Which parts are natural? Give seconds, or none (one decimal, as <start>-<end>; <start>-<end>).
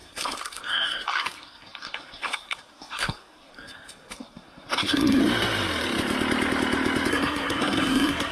5.2-7.1